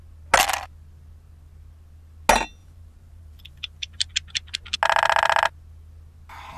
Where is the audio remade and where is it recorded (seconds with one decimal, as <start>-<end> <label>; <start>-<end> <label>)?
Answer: 0.0-2.6 recorded; 2.6-4.1 remade; 4.1-6.6 recorded